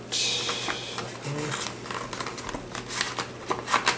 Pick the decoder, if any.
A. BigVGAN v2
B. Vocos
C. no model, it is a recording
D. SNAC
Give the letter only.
C